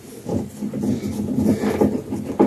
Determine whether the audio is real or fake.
real